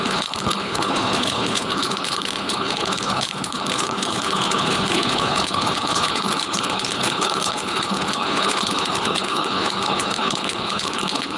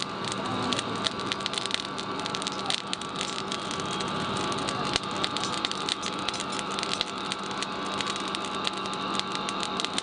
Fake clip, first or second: first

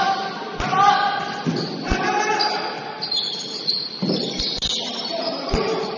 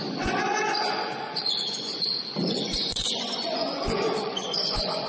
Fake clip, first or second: second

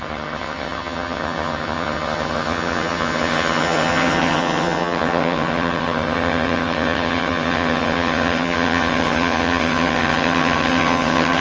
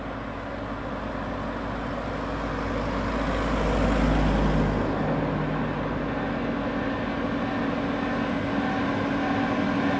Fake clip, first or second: first